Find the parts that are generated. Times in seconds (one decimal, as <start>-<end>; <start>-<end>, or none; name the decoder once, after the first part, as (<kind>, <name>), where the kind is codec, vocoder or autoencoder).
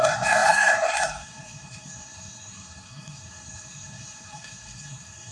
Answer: 0.0-5.3 (codec, SNAC)